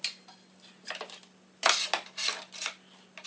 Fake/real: real